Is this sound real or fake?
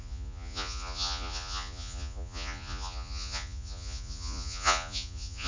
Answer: fake